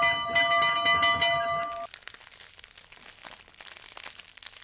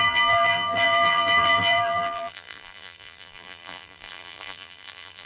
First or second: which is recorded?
first